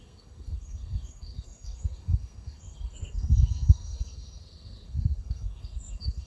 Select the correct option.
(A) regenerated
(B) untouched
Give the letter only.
A